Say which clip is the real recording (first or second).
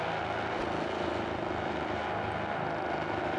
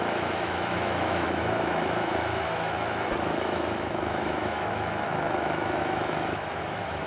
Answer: first